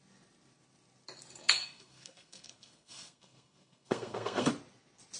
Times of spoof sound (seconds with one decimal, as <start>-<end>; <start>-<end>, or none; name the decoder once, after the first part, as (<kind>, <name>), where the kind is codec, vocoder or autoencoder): 1.4-4.5 (codec, SNAC)